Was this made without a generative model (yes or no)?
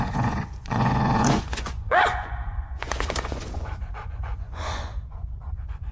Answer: no